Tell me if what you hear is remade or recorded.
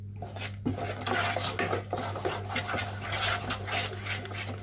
recorded